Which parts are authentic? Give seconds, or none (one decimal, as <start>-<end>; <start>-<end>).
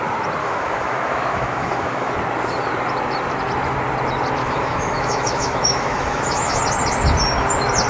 0.0-0.4; 2.1-4.4; 6.6-7.9